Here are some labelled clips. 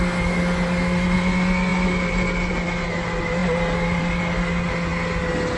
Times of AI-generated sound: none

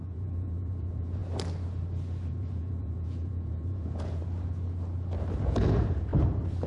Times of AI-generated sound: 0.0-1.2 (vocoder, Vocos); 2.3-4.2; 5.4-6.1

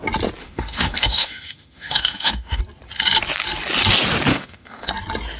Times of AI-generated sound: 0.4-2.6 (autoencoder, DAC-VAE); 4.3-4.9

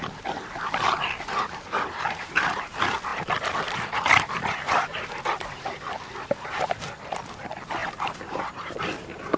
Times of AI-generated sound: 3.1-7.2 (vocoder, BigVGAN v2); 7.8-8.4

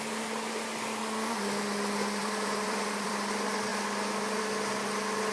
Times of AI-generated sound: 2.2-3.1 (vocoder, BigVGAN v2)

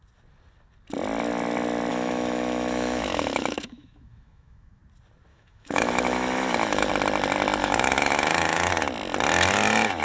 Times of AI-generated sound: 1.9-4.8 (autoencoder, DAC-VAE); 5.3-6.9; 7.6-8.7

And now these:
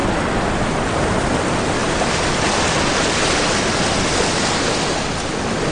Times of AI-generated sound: 1.2-1.8 (vocoder, BigVGAN v2); 5.0-5.7

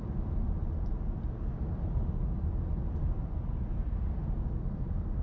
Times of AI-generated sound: none